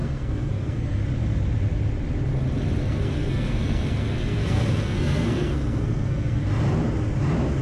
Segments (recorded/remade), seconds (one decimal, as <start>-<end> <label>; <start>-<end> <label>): 0.0-1.0 remade; 1.0-2.8 recorded; 2.8-6.4 remade; 6.4-7.6 recorded